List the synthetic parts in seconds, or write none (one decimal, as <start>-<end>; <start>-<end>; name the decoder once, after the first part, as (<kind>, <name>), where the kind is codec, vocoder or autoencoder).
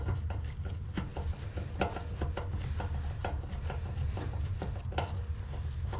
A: none